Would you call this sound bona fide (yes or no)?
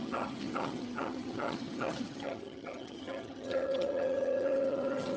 no